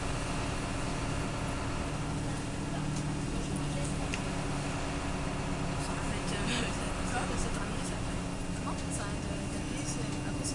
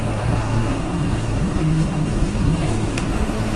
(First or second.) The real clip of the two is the first